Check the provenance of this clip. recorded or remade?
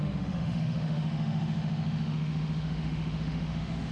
remade